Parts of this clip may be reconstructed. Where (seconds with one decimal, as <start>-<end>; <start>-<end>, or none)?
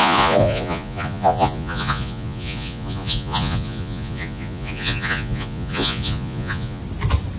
0.0-6.8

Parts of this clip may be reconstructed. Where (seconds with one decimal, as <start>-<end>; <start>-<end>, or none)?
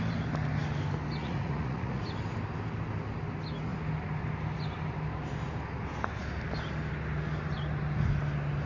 1.2-2.0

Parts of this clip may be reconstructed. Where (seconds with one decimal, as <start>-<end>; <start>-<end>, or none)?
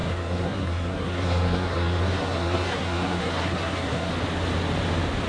0.0-4.1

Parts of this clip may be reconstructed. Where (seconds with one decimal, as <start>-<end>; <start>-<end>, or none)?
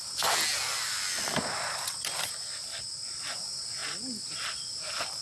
none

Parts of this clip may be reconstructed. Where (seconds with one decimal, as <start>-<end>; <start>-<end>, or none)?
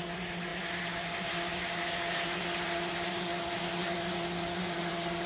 none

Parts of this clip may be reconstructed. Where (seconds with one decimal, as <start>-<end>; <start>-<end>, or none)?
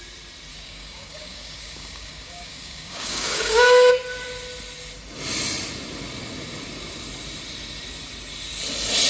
0.5-3.9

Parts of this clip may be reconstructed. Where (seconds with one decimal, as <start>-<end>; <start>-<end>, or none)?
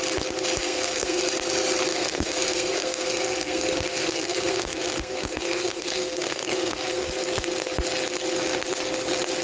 0.6-1.2; 1.9-7.1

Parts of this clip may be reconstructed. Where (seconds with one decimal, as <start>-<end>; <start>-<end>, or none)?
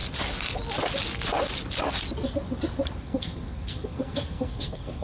3.0-5.0